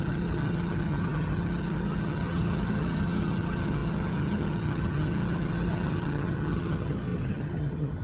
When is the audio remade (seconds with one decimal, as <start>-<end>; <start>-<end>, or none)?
0.0-8.0